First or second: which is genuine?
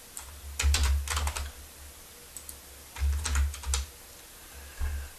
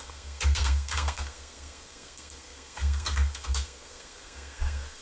first